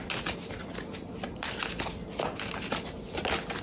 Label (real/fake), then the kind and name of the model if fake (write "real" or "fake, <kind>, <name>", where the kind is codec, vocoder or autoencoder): real